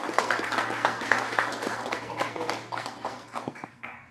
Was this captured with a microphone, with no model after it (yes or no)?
no